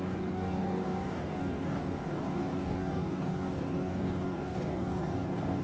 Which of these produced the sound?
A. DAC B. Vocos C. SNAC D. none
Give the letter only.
A